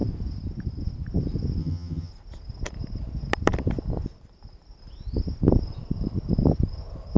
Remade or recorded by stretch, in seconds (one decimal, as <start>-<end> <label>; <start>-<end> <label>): 0.0-1.6 recorded; 1.6-2.1 remade; 2.1-7.2 recorded